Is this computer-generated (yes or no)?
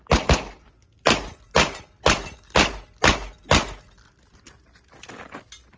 no